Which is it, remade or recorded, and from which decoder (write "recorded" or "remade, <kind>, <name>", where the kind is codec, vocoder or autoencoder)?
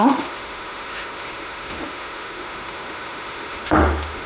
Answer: remade, autoencoder, DAC-VAE